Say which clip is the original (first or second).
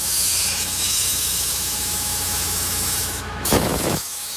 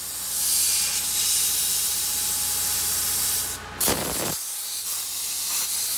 second